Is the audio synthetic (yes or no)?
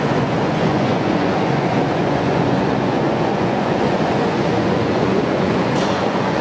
yes